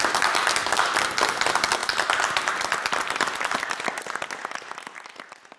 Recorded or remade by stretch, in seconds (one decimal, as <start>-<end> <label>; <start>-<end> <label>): 0.0-5.6 recorded